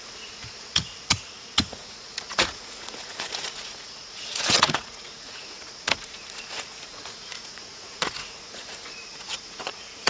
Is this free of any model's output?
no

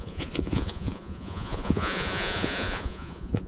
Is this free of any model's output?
no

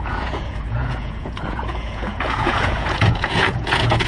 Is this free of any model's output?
no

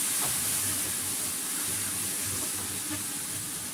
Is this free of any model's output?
yes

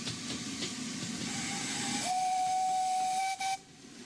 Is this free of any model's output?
yes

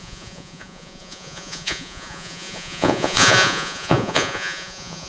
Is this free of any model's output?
no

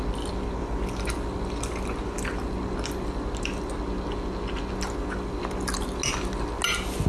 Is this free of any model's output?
yes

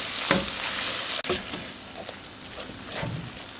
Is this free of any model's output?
yes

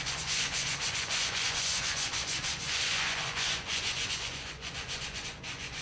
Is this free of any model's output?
no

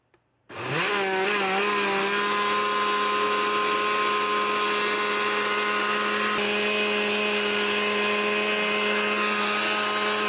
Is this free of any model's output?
yes